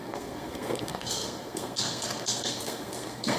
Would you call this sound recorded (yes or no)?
no